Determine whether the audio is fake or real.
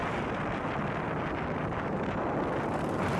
real